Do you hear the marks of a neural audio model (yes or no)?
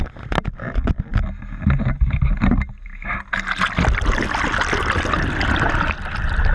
no